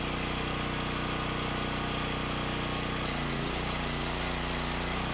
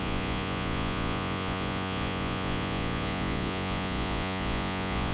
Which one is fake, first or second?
second